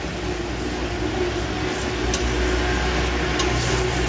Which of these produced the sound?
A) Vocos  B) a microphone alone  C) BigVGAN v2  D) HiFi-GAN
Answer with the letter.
B